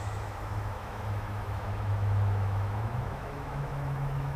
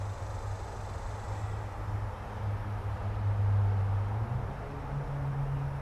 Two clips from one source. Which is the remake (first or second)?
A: first